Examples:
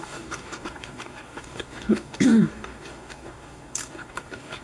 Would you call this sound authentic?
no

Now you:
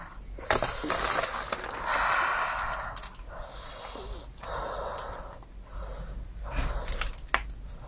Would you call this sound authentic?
yes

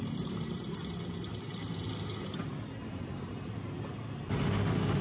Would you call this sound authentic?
yes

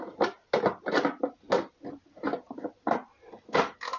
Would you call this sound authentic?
yes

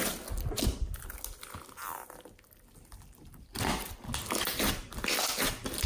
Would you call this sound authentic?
yes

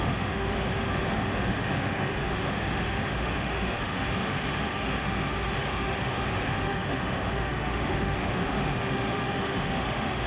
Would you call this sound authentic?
no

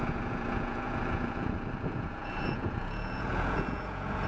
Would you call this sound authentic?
no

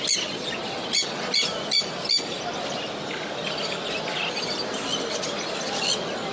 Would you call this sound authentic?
yes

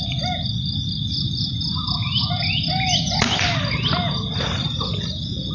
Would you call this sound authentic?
yes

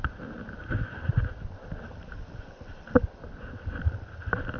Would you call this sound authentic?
yes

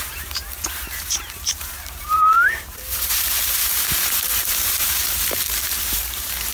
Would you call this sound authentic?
no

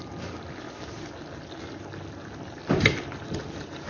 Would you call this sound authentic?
yes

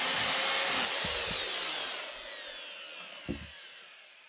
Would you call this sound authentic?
yes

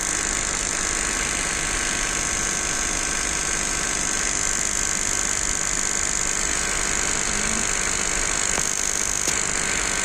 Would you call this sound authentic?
yes